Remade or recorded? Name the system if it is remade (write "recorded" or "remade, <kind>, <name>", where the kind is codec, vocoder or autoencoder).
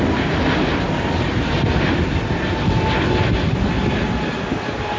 recorded